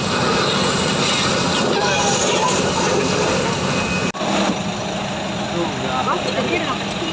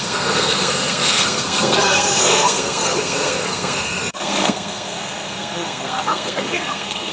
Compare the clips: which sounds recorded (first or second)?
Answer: first